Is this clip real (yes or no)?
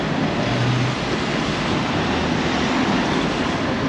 yes